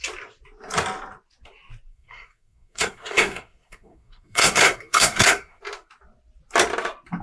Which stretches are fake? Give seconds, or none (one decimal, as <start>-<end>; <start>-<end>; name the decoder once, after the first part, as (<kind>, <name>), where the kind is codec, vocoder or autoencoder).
1.9-5.6 (codec, SNAC)